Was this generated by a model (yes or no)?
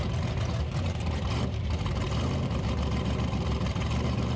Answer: yes